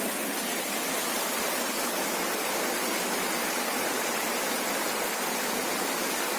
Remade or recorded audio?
recorded